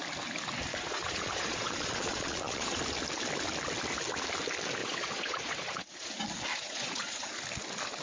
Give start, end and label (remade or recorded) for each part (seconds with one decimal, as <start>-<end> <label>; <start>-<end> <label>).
0.0-0.7 recorded; 0.7-2.8 remade; 2.8-4.8 recorded; 4.8-6.1 remade; 6.1-6.5 recorded; 6.5-7.3 remade; 7.3-8.0 recorded